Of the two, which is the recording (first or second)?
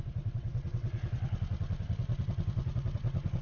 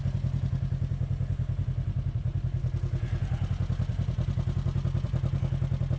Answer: second